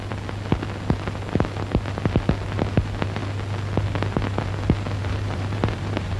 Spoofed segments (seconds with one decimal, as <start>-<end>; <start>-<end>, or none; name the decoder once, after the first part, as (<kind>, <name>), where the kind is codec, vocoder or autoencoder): 5.0-6.2 (vocoder, BigVGAN v2)